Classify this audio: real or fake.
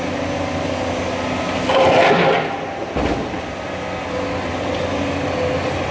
real